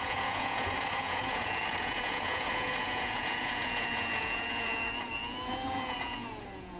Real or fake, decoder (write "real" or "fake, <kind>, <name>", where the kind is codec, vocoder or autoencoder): fake, vocoder, Vocos